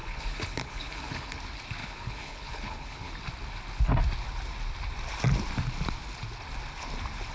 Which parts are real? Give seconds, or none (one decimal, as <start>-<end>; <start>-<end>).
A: 1.4-1.8; 3.1-7.3